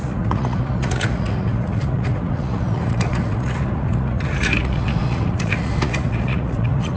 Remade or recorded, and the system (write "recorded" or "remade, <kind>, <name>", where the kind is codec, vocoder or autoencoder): remade, vocoder, Vocos